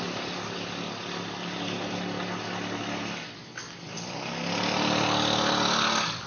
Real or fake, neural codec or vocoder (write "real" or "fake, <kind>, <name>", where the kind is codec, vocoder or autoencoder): real